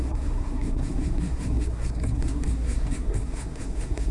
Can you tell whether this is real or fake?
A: fake